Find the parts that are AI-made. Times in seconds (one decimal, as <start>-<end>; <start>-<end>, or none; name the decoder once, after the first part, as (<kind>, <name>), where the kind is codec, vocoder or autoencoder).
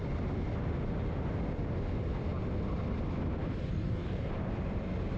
3.7-4.3 (codec, DAC)